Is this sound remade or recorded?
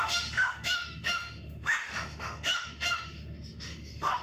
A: remade